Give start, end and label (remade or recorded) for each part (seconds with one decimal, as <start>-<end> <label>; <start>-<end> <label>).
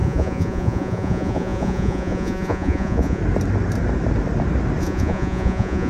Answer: 0.0-3.2 remade; 3.2-4.8 recorded; 4.8-5.9 remade